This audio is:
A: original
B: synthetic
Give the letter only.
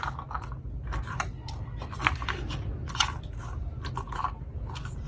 A